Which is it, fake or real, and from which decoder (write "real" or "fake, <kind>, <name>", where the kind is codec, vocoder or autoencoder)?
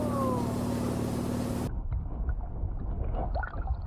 real